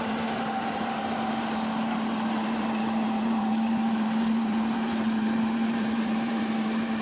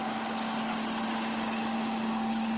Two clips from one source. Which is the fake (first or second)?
first